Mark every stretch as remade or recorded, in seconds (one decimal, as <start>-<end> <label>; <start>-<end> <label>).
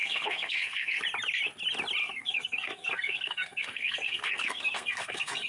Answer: 0.0-1.0 remade; 1.0-2.0 recorded; 2.0-5.5 remade